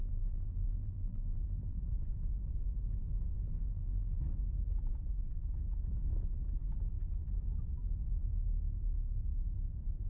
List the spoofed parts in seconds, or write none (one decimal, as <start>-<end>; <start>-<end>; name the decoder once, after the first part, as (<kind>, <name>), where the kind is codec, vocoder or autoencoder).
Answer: 0.0-1.8 (vocoder, BigVGAN v2); 3.7-4.2

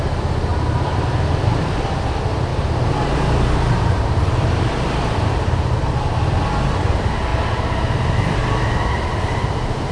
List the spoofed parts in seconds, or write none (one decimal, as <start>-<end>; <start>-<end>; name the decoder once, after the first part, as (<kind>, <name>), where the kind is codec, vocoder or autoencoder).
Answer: 2.5-6.0 (vocoder, BigVGAN v2)